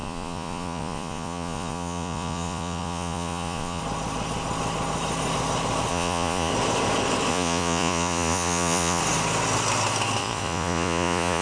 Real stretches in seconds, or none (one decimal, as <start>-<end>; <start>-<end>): 3.8-5.9; 6.5-7.3; 9.0-10.2